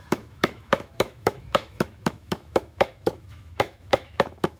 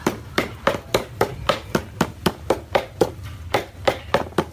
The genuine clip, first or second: second